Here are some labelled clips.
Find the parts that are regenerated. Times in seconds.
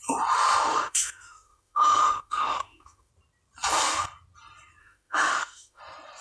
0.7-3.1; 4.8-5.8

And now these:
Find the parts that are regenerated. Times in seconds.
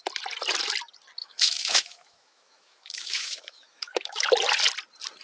1.2-4.3